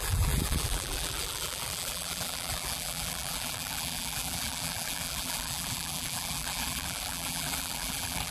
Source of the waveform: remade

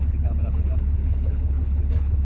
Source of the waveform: remade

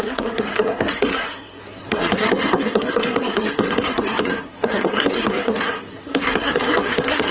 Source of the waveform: remade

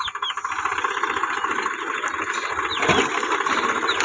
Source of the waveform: recorded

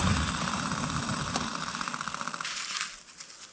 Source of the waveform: recorded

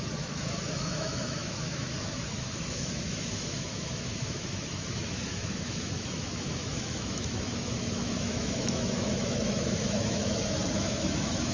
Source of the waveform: remade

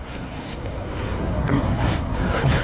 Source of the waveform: remade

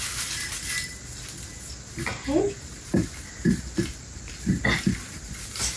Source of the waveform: recorded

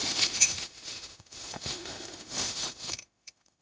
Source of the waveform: remade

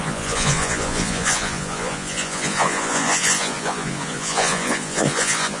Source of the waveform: remade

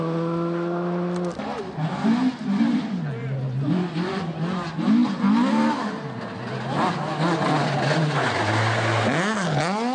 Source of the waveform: recorded